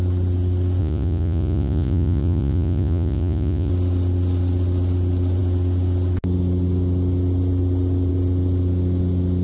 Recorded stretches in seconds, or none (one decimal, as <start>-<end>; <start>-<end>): 0.0-0.8; 3.7-9.4